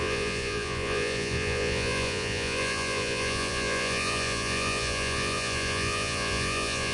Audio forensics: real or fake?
fake